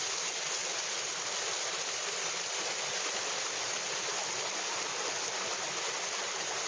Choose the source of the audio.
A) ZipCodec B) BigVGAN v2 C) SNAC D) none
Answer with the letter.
D